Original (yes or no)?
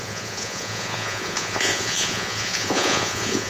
no